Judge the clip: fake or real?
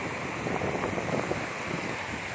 real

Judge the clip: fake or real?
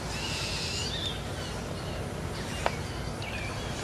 real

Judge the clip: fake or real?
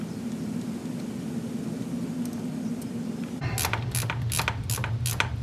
real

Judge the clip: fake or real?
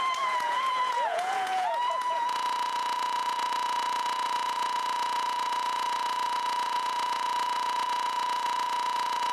fake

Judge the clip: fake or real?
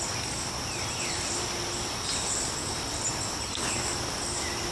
real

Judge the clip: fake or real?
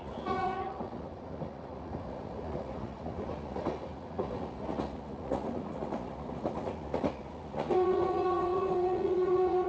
fake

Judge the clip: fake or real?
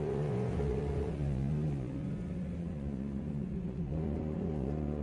fake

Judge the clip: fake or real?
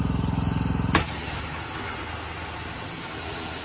real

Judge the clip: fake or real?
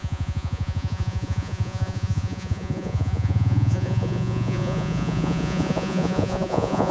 fake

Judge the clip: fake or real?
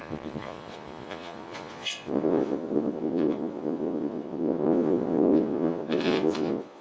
fake